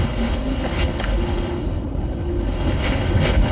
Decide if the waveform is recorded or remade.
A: remade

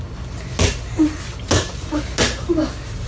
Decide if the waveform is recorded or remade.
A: recorded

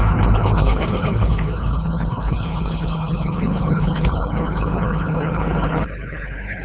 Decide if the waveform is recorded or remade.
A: remade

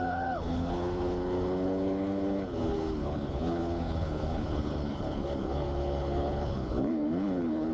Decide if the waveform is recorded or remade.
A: remade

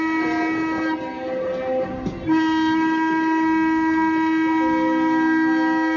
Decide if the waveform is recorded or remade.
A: recorded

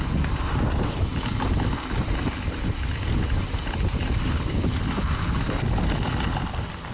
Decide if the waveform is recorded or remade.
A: recorded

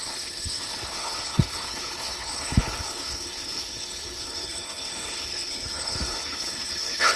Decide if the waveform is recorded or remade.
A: remade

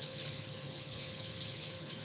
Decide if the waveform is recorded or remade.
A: remade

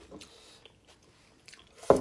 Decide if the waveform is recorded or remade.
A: recorded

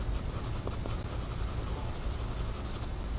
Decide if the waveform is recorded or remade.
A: recorded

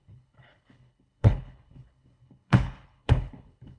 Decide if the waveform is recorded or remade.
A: remade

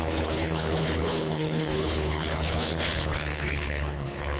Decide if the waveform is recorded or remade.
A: remade